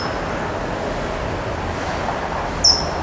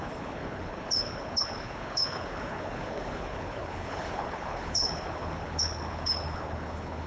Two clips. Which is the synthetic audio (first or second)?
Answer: second